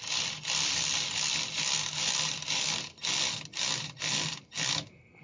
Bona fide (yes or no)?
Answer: yes